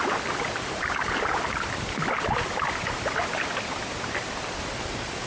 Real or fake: real